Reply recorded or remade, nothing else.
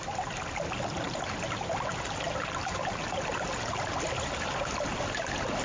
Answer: recorded